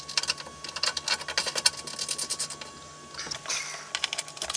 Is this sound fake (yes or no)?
no